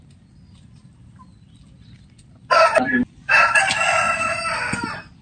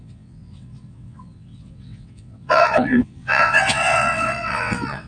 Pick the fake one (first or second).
second